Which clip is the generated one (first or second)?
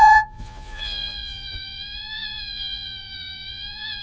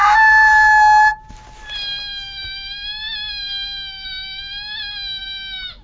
first